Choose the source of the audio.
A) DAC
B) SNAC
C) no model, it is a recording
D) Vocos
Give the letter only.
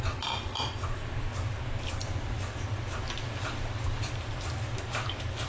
C